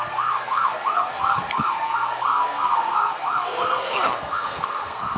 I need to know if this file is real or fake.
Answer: fake